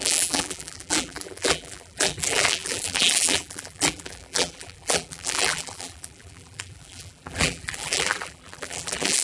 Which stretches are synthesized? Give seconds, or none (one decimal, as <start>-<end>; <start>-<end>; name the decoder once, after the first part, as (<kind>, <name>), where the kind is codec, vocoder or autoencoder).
0.0-9.2 (vocoder, BigVGAN v2)